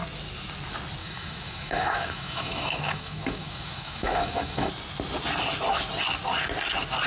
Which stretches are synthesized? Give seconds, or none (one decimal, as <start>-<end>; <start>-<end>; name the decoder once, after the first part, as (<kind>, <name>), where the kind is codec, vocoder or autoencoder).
1.0-4.7 (autoencoder, DAC-VAE)